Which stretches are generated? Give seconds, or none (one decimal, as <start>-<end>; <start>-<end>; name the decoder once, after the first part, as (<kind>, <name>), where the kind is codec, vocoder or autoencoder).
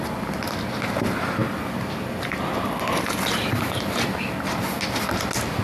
1.4-3.7 (vocoder, BigVGAN v2)